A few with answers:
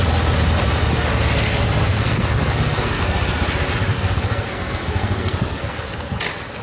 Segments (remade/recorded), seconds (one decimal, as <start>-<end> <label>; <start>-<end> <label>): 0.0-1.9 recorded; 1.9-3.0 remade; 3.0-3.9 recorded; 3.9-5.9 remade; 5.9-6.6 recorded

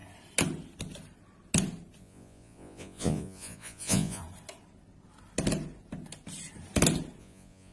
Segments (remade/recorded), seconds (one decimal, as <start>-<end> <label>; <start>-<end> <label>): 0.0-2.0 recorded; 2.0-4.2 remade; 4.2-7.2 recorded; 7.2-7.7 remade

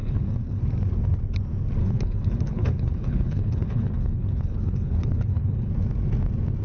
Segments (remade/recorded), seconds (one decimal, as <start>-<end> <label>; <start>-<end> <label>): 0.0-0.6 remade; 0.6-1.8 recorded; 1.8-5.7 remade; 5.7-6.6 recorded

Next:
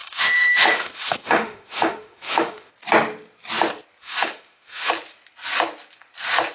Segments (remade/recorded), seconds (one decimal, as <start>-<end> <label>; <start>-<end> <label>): 0.0-2.7 remade; 2.7-4.0 recorded; 4.0-4.9 remade; 4.9-6.5 recorded

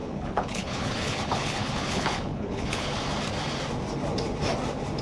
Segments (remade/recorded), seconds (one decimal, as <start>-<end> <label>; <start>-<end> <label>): 0.0-3.0 remade; 3.0-5.0 recorded